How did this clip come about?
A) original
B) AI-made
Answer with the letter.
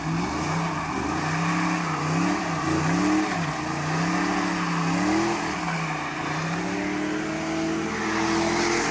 A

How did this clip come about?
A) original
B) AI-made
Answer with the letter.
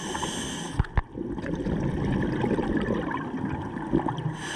A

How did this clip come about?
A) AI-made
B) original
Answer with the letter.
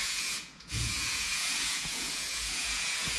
A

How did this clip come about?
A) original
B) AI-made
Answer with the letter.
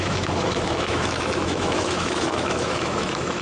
B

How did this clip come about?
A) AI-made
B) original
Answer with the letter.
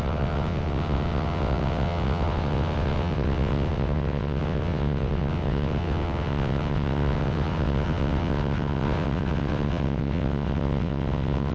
A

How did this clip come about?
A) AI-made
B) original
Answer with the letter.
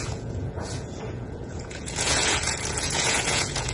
A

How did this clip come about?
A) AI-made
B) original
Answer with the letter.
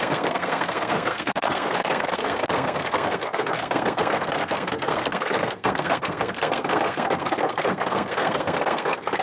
A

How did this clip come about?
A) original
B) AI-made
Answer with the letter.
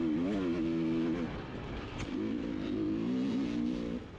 A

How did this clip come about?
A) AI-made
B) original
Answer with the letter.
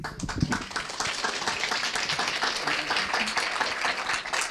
B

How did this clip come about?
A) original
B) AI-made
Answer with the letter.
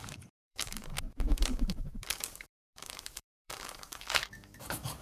B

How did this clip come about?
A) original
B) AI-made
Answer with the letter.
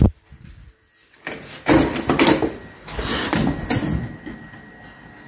A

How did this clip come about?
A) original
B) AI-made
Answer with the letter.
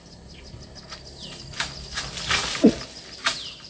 A